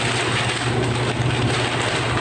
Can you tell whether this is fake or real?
real